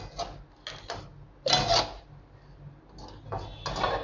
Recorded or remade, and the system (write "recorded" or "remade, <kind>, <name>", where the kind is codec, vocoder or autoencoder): recorded